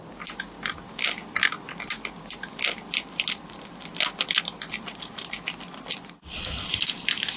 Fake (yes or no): no